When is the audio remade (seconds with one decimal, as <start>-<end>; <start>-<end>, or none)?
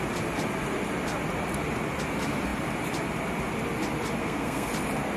4.2-4.7